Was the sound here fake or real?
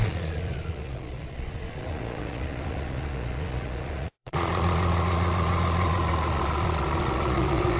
fake